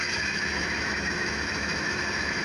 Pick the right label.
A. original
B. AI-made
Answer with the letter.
B